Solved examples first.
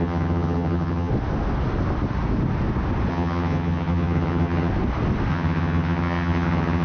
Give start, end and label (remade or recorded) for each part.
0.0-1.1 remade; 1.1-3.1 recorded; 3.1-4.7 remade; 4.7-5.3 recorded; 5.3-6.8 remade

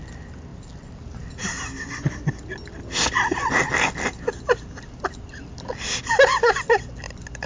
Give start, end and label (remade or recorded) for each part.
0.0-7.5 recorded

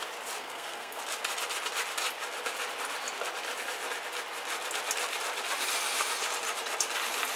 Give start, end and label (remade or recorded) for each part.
0.0-0.4 recorded; 0.4-1.0 remade; 1.0-7.4 recorded

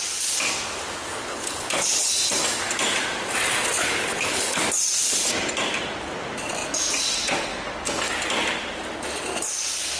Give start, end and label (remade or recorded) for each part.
0.0-1.2 recorded; 1.2-2.1 remade; 2.1-3.8 recorded; 3.8-4.6 remade; 4.6-10.0 recorded

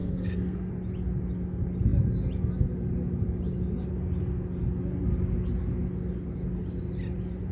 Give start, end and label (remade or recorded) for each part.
0.0-0.7 remade; 0.7-7.5 recorded

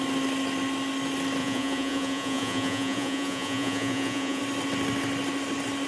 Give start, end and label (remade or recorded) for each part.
0.0-1.4 recorded; 1.4-4.4 remade; 4.4-5.9 recorded

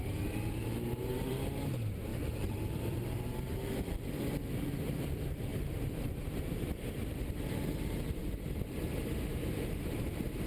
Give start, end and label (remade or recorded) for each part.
0.0-10.5 remade